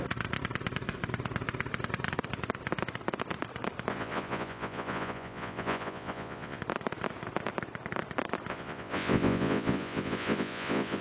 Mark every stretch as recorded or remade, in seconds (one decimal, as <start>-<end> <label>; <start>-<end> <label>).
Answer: 0.0-3.9 recorded; 3.9-6.6 remade; 6.6-8.5 recorded; 8.5-11.0 remade